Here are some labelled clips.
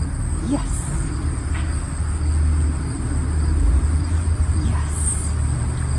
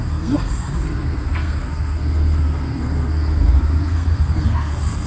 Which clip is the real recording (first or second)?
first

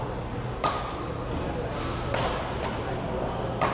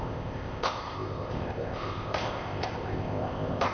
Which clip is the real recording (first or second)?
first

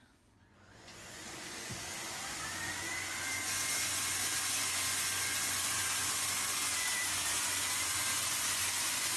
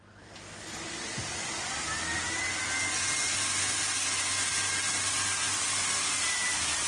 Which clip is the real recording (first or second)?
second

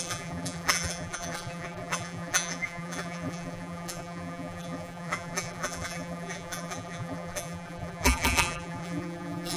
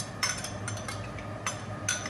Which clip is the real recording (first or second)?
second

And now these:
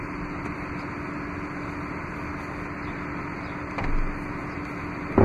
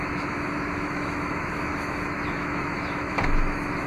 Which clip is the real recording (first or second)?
first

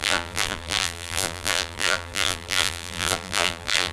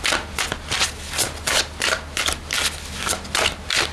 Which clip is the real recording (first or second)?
second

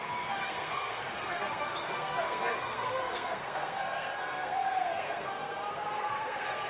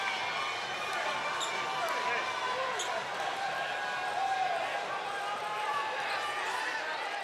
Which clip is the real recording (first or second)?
second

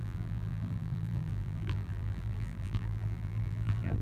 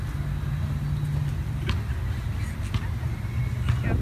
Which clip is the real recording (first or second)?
second